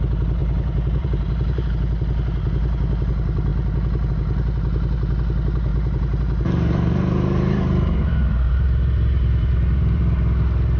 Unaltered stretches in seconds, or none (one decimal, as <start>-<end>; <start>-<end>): 0.0-0.4; 1.7-2.6; 3.1-5.7; 10.0-10.8